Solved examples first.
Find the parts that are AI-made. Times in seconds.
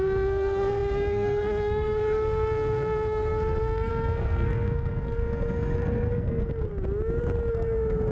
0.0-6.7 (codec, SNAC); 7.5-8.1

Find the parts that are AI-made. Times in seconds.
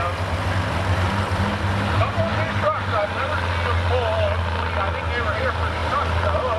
none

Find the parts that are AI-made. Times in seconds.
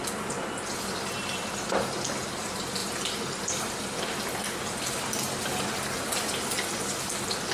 none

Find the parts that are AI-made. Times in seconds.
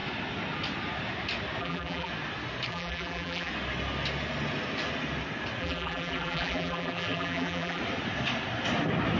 1.6-2.1 (vocoder, BigVGAN v2); 2.7-3.5; 5.6-7.8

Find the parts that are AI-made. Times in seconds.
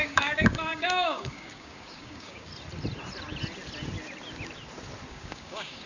0.0-2.5 (codec, DAC); 5.1-5.9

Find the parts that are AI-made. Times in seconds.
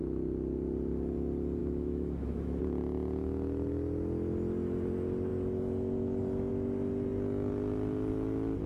1.6-2.6 (autoencoder, DAC-VAE)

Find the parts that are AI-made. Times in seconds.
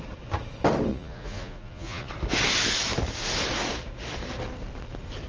0.9-2.1 (vocoder, Vocos)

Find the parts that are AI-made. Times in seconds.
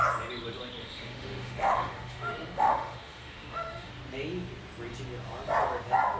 0.8-3.9 (autoencoder, DAC-VAE)